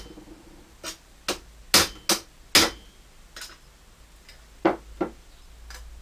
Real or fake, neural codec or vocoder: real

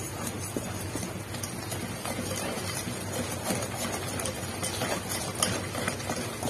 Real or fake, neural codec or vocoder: real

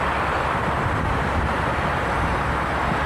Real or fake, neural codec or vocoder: real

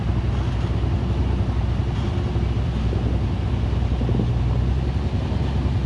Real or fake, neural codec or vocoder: real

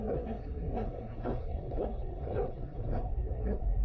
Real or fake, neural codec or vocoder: fake, codec, SNAC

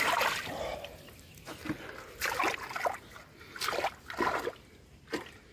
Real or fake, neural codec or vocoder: real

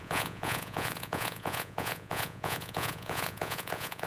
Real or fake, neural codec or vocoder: fake, vocoder, Vocos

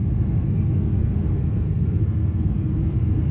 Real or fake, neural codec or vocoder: fake, codec, SNAC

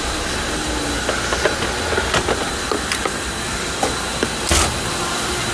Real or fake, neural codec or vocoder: real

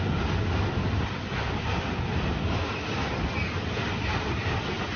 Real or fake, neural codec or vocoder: real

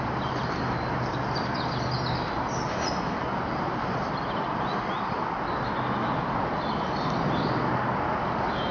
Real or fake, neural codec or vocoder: real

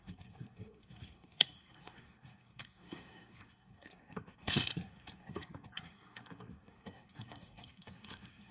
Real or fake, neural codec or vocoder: fake, codec, SNAC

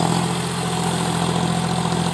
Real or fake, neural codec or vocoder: real